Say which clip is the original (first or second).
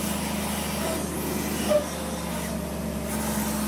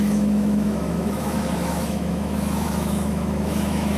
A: first